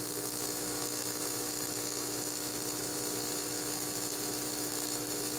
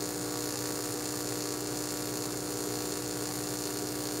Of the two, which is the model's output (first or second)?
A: first